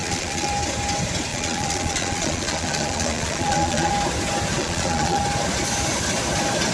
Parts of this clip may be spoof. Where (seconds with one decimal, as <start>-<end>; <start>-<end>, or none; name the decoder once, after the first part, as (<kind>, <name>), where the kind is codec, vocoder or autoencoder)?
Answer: 0.0-0.5 (vocoder, Vocos); 1.3-3.9; 4.6-5.2